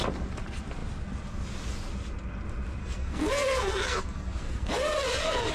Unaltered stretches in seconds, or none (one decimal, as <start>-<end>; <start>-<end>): 0.0-2.8